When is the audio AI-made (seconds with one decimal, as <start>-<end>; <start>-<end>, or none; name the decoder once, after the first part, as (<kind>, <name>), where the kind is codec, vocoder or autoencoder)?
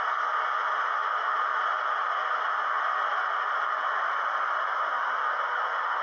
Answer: none